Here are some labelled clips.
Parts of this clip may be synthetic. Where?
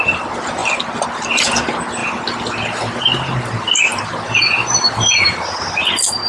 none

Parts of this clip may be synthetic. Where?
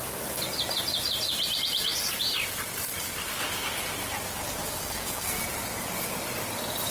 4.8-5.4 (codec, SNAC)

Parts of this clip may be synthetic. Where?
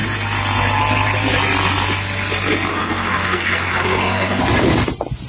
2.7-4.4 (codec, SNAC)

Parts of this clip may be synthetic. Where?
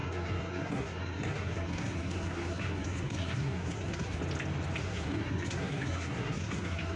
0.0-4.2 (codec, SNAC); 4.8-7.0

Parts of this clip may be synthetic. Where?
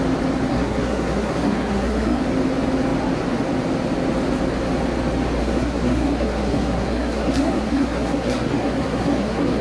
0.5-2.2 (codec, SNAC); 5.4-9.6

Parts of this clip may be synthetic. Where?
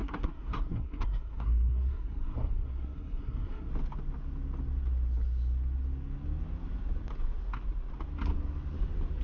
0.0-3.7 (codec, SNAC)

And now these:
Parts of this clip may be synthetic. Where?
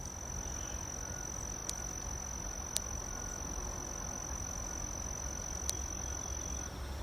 none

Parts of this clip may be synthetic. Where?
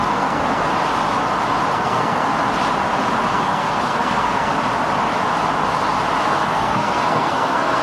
0.0-0.7 (codec, SNAC); 1.7-2.3; 3.3-4.5; 6.2-7.8